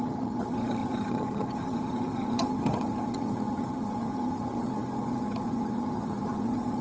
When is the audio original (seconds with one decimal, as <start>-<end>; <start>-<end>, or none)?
none